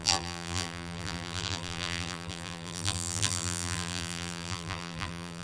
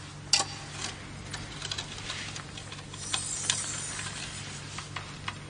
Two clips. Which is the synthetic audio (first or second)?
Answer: first